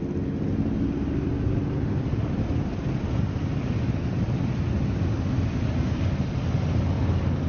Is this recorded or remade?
recorded